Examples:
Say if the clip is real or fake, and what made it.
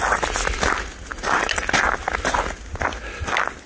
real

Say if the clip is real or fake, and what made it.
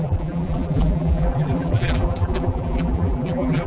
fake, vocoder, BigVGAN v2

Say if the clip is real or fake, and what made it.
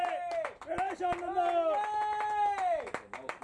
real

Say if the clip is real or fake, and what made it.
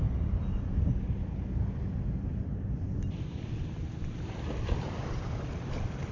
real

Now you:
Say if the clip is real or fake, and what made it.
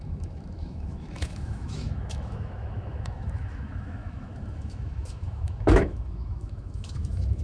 fake, autoencoder, DAC-VAE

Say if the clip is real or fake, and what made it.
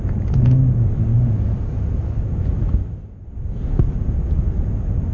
real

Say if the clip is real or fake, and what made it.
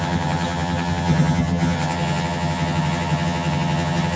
fake, vocoder, HiFi-GAN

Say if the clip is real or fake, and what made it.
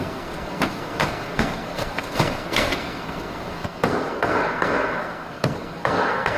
fake, codec, SNAC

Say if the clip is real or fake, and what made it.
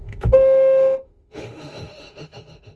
fake, autoencoder, DAC-VAE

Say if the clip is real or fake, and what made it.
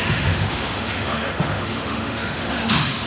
fake, autoencoder, DAC-VAE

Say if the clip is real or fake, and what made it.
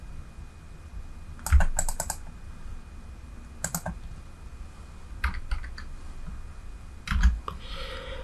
real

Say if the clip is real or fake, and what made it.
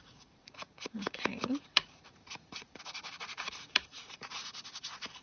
fake, vocoder, Vocos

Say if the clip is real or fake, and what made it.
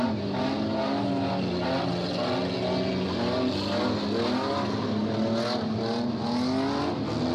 real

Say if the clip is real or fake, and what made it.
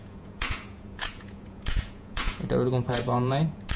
fake, vocoder, Vocos